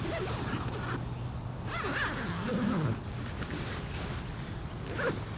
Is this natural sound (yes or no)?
yes